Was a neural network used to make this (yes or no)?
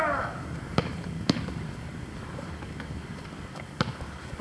yes